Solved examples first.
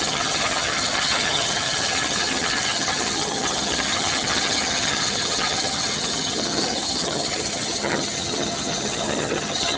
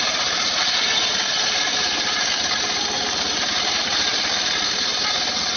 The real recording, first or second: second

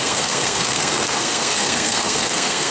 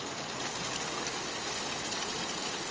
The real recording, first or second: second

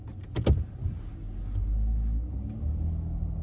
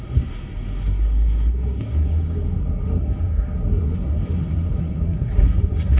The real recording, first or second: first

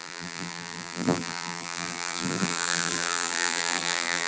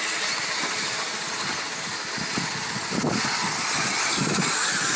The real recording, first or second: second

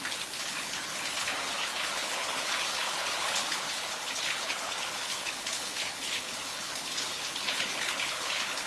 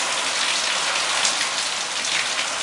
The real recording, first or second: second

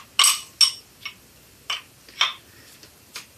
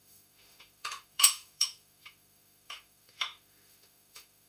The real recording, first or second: first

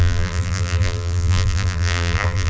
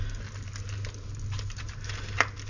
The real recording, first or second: second